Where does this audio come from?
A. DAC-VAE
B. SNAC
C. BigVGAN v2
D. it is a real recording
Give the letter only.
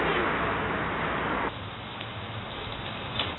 D